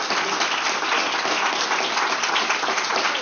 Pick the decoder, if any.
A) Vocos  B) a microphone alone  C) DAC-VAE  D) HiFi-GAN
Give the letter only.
B